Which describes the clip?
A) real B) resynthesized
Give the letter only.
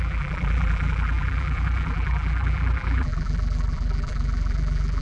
B